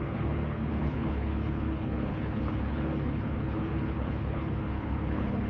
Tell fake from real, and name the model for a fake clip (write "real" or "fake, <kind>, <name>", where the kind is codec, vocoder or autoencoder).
fake, codec, HILCodec